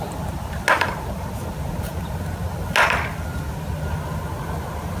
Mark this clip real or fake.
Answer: real